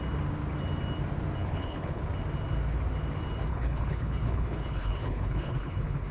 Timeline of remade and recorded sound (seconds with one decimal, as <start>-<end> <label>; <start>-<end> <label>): 0.0-1.4 recorded; 1.4-2.0 remade; 2.0-3.5 recorded; 3.5-6.1 remade